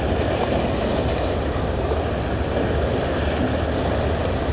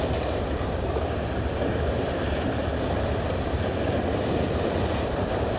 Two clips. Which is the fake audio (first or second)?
second